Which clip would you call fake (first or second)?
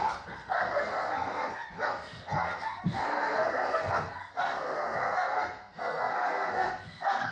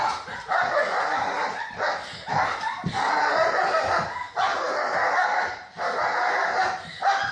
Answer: first